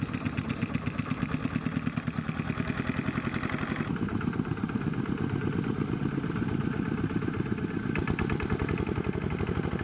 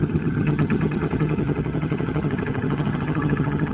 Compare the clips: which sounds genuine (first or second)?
first